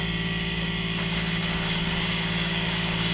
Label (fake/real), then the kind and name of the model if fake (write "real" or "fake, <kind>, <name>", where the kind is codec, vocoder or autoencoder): fake, codec, DAC